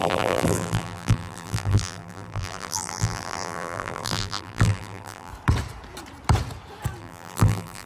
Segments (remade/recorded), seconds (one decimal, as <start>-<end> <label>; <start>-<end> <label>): 0.0-5.3 remade; 5.3-7.0 recorded; 7.0-7.9 remade